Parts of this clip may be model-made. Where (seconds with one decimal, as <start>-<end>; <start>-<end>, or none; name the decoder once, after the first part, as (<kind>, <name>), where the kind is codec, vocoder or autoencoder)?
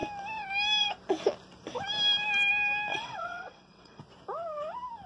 2.9-4.0 (vocoder, WaveNeXt)